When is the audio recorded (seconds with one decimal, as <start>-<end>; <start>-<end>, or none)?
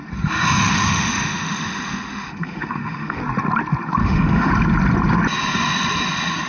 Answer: 0.0-0.6; 3.2-4.0; 4.5-6.5